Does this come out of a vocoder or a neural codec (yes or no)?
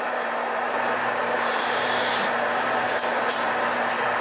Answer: yes